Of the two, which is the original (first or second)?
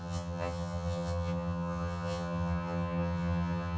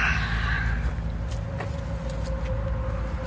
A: second